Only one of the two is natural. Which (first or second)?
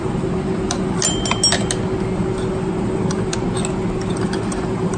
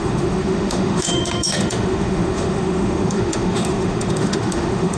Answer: first